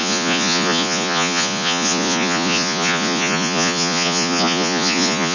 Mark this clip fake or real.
fake